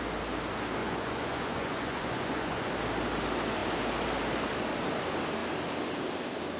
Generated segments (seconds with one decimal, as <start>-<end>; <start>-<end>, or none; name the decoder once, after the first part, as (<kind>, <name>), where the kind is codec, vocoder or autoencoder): 0.8-2.7 (vocoder, Vocos)